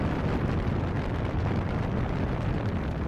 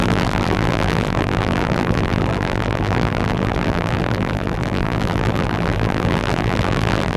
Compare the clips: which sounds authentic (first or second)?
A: first